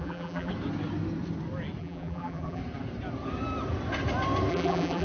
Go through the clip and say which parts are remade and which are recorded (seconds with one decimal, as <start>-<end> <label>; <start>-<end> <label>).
0.0-0.5 remade; 0.5-1.8 recorded; 1.8-2.6 remade; 2.6-4.5 recorded; 4.5-5.0 remade